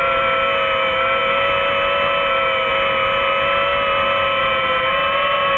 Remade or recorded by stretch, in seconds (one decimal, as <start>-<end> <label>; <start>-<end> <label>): 0.0-5.6 recorded